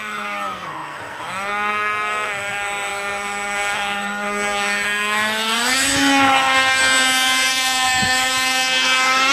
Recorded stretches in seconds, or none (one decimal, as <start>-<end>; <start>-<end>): 6.8-7.5